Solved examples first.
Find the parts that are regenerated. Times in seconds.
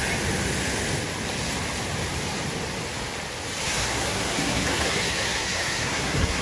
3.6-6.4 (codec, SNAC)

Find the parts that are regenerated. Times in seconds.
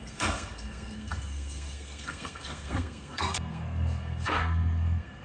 0.0-5.2 (codec, SNAC)